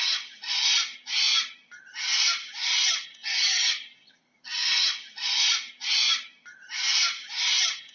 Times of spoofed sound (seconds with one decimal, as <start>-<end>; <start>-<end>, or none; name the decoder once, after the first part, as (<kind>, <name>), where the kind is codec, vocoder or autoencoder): none